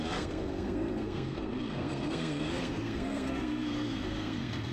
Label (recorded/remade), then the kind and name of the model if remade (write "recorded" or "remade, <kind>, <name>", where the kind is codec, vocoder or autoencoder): remade, codec, SNAC